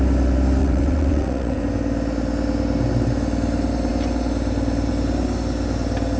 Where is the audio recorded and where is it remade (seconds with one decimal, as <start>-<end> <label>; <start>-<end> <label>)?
0.0-0.6 recorded; 0.6-1.6 remade; 1.6-6.2 recorded